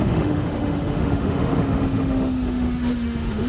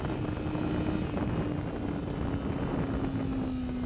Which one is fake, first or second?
first